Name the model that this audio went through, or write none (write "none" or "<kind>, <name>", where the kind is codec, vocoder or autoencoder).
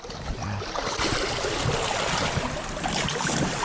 none